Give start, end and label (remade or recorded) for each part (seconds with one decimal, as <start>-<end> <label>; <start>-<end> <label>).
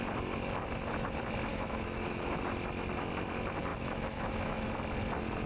0.0-1.5 recorded; 1.5-2.4 remade; 2.4-3.7 recorded; 3.7-4.7 remade; 4.7-5.5 recorded